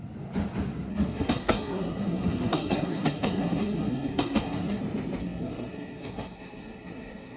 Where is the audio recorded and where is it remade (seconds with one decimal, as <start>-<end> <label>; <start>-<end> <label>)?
0.0-0.9 recorded; 0.9-4.8 remade; 4.8-5.2 recorded; 5.2-7.4 remade